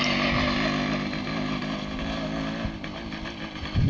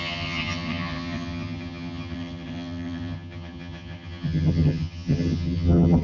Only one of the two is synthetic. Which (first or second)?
second